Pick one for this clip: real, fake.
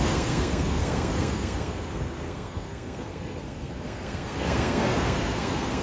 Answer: fake